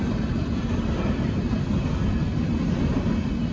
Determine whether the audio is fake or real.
real